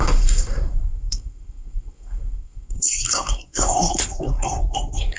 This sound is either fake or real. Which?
fake